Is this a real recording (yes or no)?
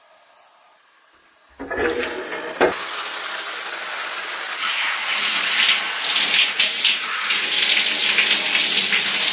yes